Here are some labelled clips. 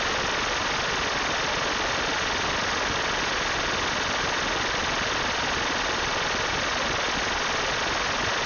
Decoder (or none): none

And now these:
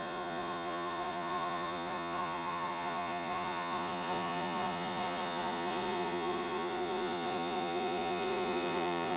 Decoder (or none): vocoder, Vocos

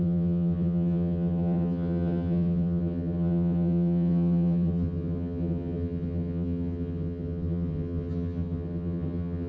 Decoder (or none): vocoder, HiFi-GAN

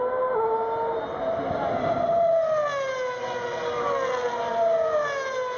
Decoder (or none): none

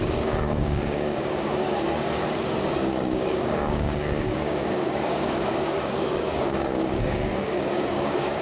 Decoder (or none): codec, DAC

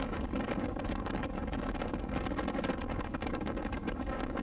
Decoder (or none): codec, DAC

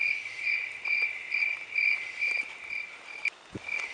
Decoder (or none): none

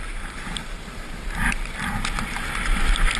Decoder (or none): vocoder, BigVGAN v2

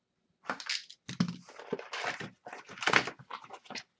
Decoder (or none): none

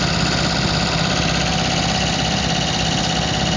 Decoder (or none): none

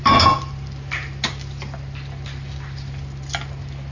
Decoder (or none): none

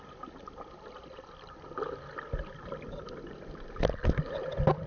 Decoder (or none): none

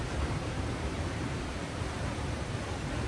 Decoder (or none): vocoder, BigVGAN v2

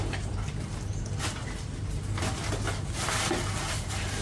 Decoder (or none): none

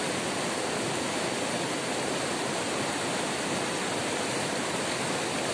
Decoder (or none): none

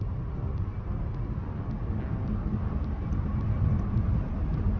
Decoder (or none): none